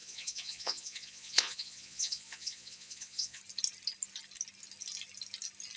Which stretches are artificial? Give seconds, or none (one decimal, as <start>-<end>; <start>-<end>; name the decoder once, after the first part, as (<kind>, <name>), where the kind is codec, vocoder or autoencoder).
0.0-3.4 (vocoder, Vocos)